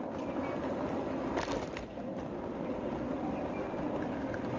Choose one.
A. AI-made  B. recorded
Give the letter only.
B